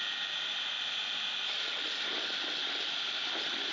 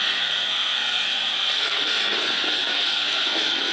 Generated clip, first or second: second